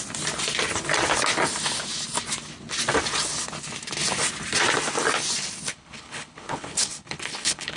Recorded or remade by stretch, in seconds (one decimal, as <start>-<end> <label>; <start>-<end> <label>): 0.0-5.7 recorded; 5.7-7.8 remade